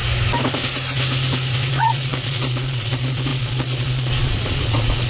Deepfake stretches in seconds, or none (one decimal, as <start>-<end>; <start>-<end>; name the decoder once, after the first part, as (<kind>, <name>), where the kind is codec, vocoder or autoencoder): 1.7-5.1 (vocoder, Vocos)